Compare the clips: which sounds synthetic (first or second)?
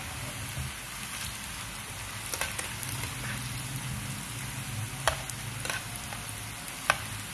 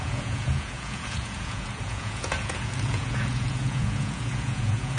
second